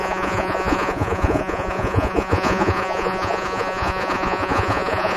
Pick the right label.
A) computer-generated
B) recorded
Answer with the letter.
A